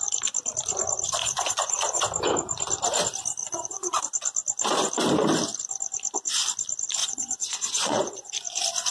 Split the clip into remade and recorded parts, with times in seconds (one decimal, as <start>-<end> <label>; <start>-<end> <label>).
0.0-1.2 recorded; 1.2-2.0 remade; 2.0-3.4 recorded; 3.4-4.0 remade; 4.0-7.0 recorded; 7.0-8.3 remade; 8.3-8.9 recorded